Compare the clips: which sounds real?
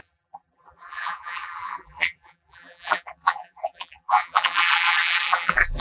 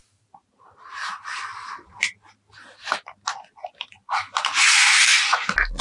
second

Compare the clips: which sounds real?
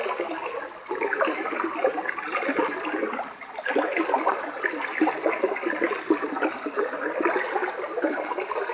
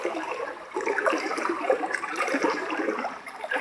first